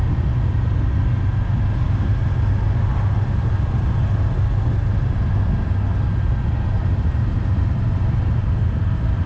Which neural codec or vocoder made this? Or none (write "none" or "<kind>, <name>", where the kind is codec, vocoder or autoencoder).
none